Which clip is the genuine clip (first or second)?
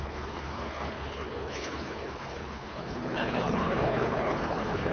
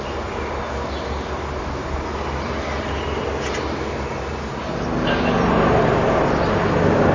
second